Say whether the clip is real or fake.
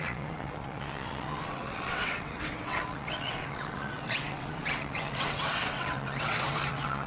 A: fake